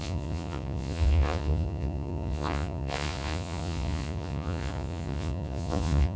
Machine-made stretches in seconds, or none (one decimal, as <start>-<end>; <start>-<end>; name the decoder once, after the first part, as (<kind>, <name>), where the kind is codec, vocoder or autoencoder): 0.0-6.2 (vocoder, Vocos)